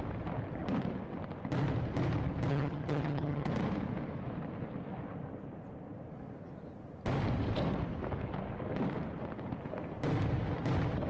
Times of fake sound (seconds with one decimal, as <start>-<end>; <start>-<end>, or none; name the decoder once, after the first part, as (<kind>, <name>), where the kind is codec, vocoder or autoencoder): 2.5-3.5 (vocoder, HiFi-GAN)